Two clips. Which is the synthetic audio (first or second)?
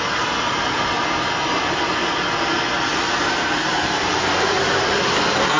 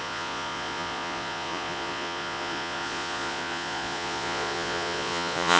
second